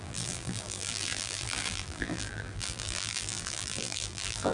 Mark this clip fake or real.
fake